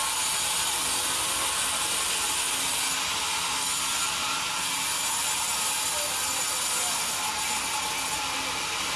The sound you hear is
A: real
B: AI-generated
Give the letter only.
A